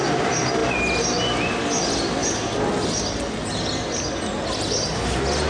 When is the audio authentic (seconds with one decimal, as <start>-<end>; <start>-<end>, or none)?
0.0-5.5